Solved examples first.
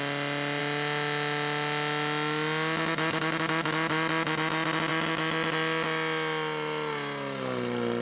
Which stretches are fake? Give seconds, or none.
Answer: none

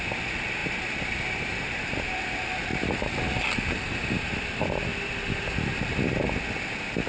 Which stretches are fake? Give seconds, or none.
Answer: none

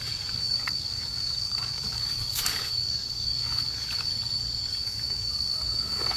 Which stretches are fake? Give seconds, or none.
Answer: 0.0-4.1 (codec, DAC); 4.7-6.2

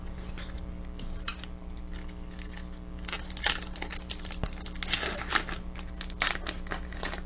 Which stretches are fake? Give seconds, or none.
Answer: none

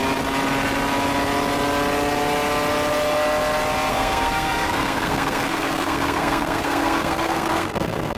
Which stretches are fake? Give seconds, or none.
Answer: 3.9-8.2 (codec, SNAC)

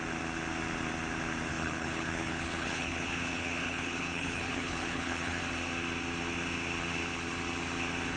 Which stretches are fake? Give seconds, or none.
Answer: 1.5-5.4 (codec, HILCodec)

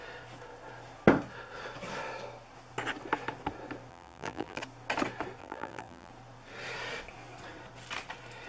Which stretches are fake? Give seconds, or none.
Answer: 3.9-4.6 (vocoder, BigVGAN v2); 5.4-6.1

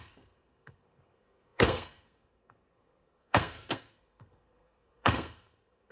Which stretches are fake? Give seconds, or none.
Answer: 0.0-5.9 (codec, SNAC)